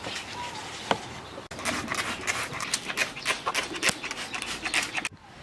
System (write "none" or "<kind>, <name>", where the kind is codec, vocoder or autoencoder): none